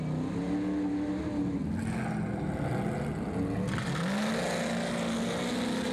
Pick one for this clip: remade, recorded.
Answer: recorded